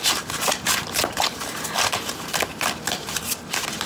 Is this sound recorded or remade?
remade